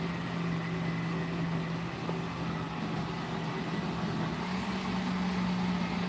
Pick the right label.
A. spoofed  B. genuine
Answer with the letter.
B